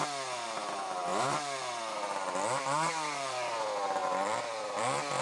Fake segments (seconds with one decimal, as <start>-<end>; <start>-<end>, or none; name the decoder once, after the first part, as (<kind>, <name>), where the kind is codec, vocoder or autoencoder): 1.1-3.6 (vocoder, BigVGAN v2); 4.0-5.2